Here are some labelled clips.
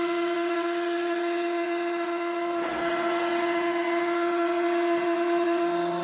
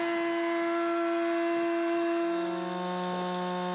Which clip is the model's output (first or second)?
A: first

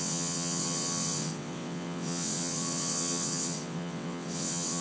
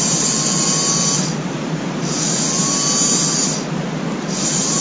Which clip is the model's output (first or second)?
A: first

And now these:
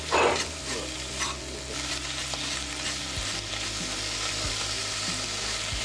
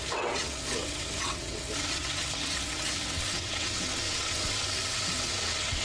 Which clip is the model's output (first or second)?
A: second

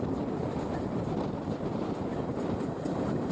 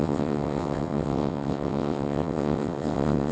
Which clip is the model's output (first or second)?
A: second